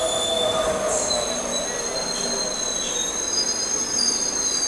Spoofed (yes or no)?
no